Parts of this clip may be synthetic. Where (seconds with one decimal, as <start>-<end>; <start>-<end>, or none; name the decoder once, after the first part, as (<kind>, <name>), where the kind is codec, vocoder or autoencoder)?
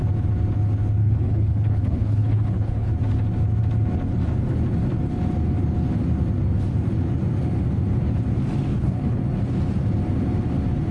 1.0-2.9 (codec, HILCodec); 8.7-9.2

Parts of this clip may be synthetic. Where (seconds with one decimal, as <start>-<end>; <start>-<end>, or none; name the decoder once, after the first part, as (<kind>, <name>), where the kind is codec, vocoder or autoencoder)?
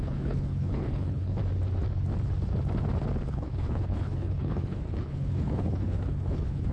0.0-1.4 (codec, HILCodec); 3.3-6.7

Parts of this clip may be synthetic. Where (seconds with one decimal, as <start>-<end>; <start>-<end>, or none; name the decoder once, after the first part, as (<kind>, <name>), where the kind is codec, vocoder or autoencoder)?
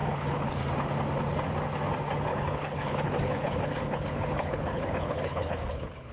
0.0-0.6 (codec, HILCodec); 2.3-6.1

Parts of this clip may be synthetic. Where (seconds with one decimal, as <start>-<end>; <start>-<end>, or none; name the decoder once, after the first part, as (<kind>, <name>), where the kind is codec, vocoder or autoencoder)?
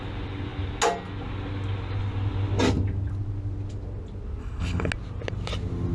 4.4-4.9 (codec, HILCodec)